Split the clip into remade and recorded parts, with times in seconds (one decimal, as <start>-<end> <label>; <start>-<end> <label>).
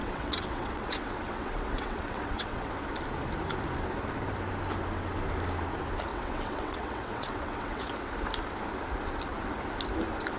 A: 0.0-2.7 remade; 2.7-6.1 recorded; 6.1-7.9 remade; 7.9-10.4 recorded